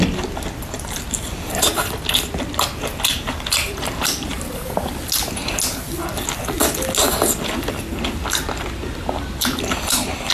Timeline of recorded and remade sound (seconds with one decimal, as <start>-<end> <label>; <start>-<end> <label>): 0.0-2.9 recorded; 2.9-4.9 remade; 4.9-10.3 recorded